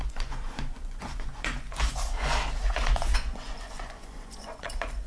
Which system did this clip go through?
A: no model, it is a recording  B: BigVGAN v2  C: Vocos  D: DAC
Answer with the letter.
C